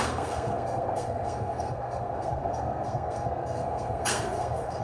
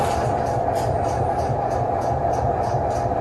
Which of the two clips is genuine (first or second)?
second